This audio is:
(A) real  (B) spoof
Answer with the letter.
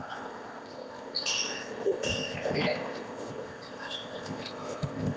B